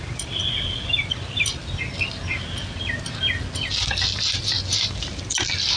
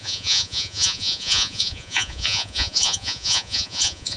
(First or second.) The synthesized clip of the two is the second